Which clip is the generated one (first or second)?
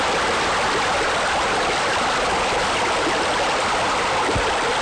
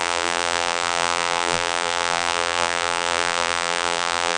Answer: second